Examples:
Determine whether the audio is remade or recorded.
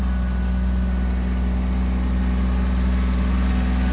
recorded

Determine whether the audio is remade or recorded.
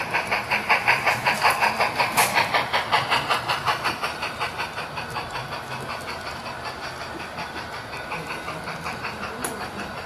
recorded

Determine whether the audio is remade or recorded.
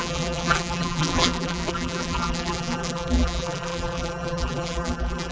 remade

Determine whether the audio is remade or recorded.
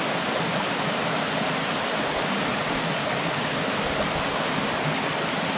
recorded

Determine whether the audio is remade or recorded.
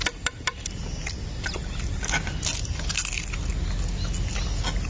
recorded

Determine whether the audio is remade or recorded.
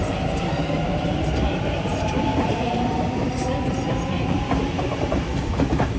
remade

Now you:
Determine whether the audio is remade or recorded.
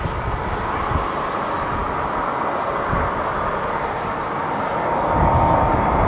recorded